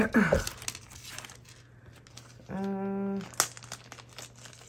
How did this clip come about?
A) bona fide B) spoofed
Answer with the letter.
A